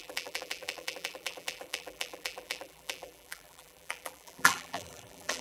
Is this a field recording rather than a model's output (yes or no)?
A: no